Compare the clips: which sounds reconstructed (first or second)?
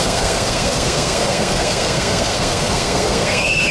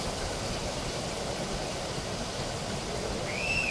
first